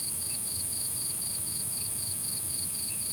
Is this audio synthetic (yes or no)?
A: yes